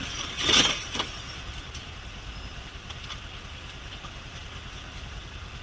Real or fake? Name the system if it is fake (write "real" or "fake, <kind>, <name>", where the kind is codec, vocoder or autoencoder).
real